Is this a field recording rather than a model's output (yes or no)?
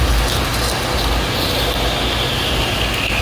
yes